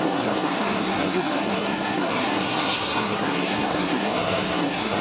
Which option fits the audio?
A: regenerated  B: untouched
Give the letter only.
A